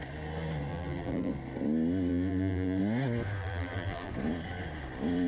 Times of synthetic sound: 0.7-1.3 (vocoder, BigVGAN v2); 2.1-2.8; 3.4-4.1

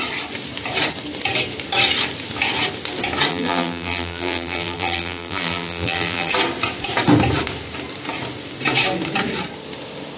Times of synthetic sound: 3.3-6.3 (vocoder, BigVGAN v2)

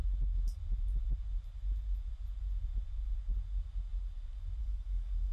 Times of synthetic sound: 4.6-5.3 (codec, DAC)

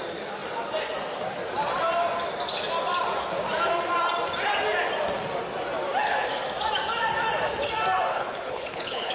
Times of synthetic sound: 8.1-9.1 (codec, HILCodec)

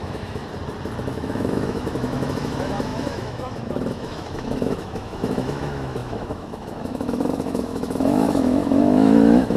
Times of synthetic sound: 0.0-0.4 (autoencoder, DAC-VAE); 1.0-9.6

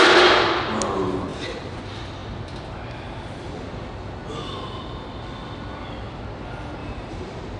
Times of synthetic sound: 1.3-1.8 (vocoder, BigVGAN v2); 6.8-7.6

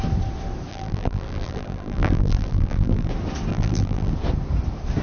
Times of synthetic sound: 0.7-3.1 (vocoder, BigVGAN v2); 3.5-4.1

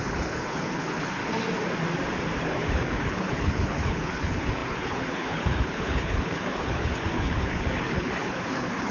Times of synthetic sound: 0.0-1.2 (codec, HILCodec); 2.4-8.9